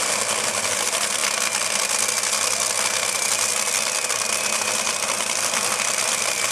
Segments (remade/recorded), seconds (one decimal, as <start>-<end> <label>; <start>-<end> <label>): 0.0-1.2 remade; 1.2-4.4 recorded; 4.4-6.5 remade